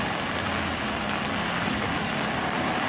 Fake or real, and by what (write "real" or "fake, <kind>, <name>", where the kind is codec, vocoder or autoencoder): real